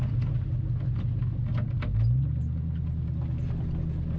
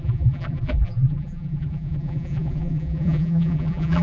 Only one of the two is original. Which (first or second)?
first